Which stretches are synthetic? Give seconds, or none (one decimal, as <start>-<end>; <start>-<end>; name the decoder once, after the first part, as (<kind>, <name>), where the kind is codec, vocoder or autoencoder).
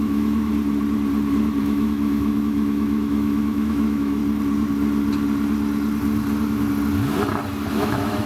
0.0-0.5 (autoencoder, DAC-VAE); 1.6-4.2; 7.7-8.3